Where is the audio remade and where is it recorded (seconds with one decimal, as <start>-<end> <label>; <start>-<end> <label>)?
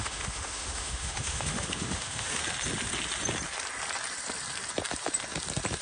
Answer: 0.0-2.4 remade; 2.4-5.8 recorded